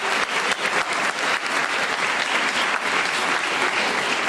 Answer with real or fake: real